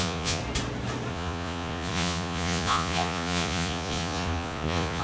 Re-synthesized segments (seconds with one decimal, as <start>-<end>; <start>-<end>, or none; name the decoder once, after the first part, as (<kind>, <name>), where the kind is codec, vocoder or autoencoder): 0.0-0.4 (vocoder, Vocos); 1.1-5.0